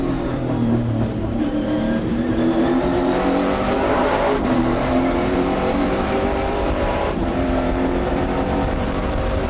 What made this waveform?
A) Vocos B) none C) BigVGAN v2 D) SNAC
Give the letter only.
C